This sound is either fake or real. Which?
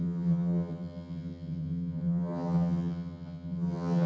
fake